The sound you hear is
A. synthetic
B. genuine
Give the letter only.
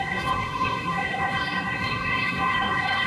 A